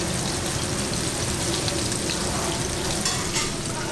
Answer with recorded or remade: recorded